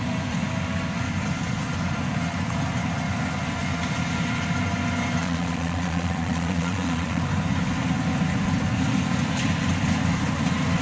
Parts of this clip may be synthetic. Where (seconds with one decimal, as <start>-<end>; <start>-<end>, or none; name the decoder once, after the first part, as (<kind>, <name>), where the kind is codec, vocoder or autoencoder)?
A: 5.2-7.2 (vocoder, Vocos)

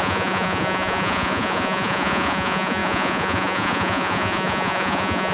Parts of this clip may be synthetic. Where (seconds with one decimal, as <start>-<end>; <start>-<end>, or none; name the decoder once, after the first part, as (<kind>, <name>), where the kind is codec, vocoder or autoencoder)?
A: 0.0-5.3 (vocoder, Vocos)

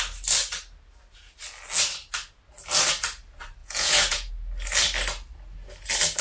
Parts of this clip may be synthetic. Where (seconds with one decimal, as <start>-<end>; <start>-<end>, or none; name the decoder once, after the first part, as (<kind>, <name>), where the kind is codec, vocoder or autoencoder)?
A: 3.6-4.3 (vocoder, Vocos)

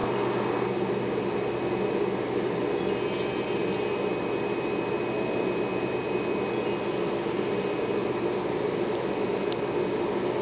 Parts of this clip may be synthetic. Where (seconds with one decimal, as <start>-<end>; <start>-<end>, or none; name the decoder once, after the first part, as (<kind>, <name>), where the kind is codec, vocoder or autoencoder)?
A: none

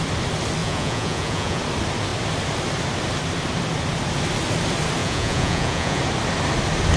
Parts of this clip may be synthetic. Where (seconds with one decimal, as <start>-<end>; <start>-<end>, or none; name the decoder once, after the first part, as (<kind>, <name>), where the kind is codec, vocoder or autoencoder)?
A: 0.6-1.6 (vocoder, Vocos); 5.0-6.0

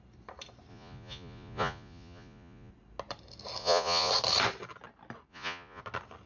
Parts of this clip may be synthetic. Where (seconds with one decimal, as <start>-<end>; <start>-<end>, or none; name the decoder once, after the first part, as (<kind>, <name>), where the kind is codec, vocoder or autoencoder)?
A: 0.7-2.7 (vocoder, Vocos); 3.6-4.1; 5.3-5.8

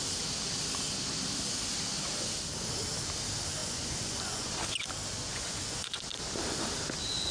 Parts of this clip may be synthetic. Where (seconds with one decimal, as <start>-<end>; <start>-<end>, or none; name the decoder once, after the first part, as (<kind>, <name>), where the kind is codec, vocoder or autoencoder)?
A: 3.6-4.5 (vocoder, Vocos); 5.3-6.0